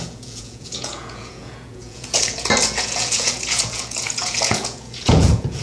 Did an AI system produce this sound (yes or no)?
yes